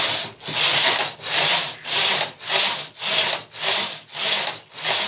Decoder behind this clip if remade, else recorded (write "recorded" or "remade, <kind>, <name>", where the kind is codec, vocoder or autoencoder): recorded